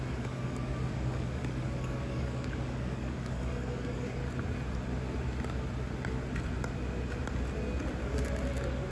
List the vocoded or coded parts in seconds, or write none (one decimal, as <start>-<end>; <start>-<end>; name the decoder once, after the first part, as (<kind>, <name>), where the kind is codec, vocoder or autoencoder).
0.0-4.2 (codec, DAC)